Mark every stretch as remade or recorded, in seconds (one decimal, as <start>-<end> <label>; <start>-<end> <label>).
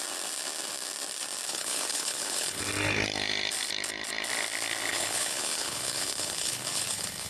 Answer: 0.0-1.5 recorded; 1.5-2.6 remade; 2.6-4.9 recorded; 4.9-7.3 remade